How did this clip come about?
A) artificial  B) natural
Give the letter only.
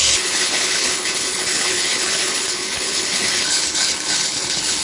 A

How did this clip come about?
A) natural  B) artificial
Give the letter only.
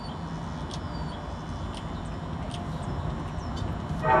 A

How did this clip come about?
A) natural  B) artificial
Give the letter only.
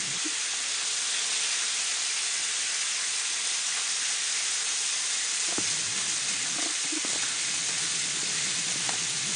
A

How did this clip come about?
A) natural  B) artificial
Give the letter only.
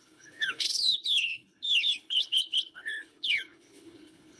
B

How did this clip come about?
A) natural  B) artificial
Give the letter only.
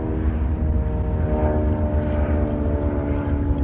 A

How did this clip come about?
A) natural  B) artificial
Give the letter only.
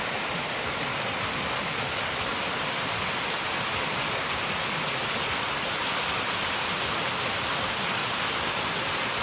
A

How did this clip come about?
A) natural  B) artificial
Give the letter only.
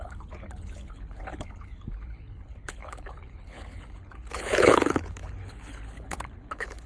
B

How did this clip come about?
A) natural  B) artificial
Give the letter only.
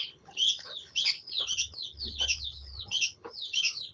B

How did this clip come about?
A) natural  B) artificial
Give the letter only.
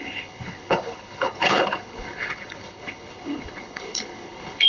B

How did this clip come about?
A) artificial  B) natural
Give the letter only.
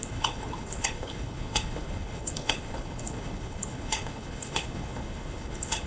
A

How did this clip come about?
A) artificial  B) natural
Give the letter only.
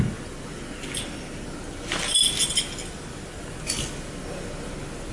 B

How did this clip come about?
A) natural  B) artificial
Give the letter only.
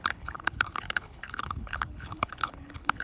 B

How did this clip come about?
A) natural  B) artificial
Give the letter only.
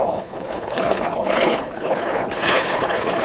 B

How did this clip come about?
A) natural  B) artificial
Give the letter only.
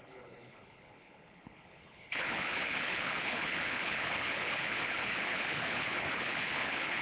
B